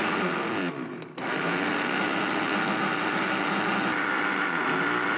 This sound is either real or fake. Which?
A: real